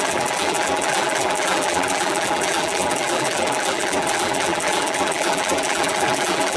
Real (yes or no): no